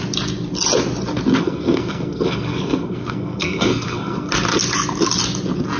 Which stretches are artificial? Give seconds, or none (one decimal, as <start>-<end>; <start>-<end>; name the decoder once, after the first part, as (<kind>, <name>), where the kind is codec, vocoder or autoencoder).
1.4-4.3 (codec, SNAC)